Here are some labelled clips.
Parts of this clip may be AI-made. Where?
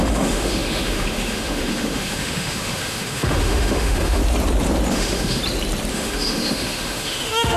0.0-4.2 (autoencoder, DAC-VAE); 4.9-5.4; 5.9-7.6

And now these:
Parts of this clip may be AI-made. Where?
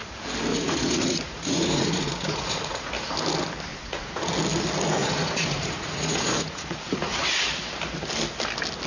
0.5-2.9 (vocoder, Vocos); 3.7-4.3; 5.0-7.4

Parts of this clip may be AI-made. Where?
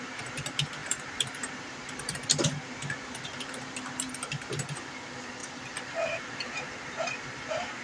0.0-7.8 (vocoder, BigVGAN v2)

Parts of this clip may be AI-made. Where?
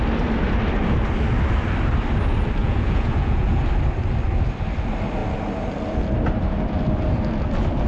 2.6-3.6 (vocoder, Vocos)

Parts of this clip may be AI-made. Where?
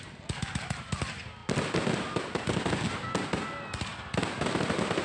none